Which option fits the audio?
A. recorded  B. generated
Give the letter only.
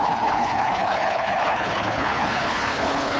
B